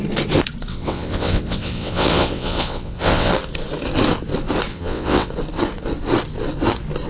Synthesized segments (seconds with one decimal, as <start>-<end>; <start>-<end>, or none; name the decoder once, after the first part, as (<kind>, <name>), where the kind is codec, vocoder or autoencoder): 0.7-3.3 (vocoder, WaveNeXt); 4.7-5.3